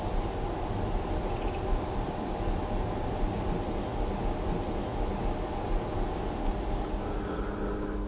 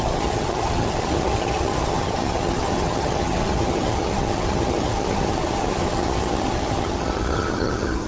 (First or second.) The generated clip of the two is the second